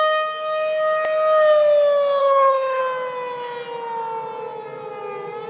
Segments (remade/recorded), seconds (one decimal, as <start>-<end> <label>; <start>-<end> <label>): 0.0-2.2 recorded; 2.2-2.8 remade; 2.8-5.5 recorded